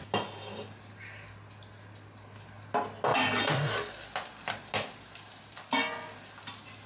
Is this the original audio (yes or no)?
yes